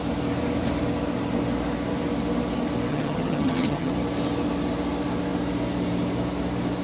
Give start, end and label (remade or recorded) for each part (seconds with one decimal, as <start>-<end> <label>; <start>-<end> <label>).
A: 0.0-2.9 recorded; 2.9-3.9 remade; 3.9-6.8 recorded